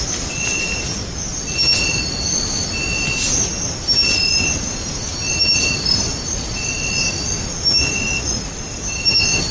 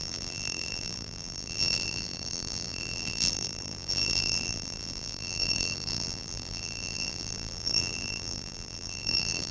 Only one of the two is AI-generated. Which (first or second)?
second